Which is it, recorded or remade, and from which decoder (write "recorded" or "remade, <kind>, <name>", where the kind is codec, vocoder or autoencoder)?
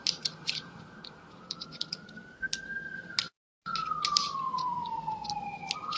recorded